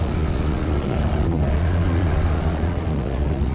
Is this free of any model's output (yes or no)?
no